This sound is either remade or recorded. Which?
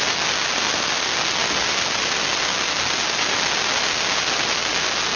recorded